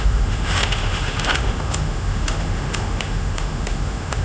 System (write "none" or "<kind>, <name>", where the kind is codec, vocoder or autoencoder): autoencoder, DAC-VAE